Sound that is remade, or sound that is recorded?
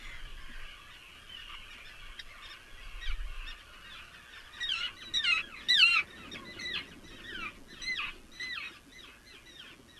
recorded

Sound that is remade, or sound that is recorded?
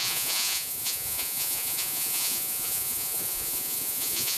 remade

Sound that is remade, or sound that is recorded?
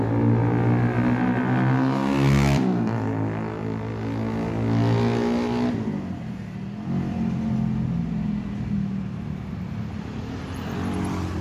recorded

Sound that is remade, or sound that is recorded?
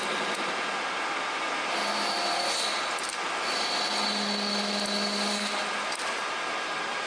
recorded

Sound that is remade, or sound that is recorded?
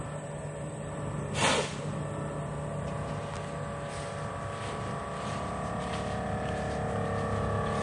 recorded